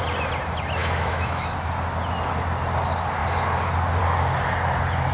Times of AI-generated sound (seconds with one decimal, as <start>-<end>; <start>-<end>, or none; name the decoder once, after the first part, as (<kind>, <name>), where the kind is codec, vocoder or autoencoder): 0.8-1.7 (autoencoder, DAC-VAE)